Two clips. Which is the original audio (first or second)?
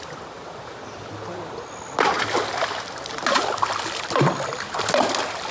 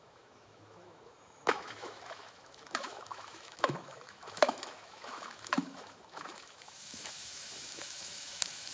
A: first